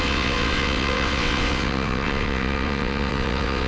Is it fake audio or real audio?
fake